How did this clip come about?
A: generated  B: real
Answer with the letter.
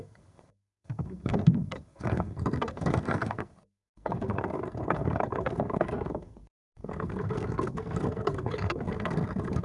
A